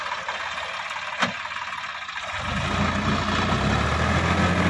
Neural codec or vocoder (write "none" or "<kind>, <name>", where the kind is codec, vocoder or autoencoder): none